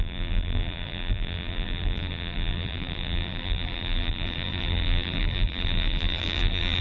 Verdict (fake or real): fake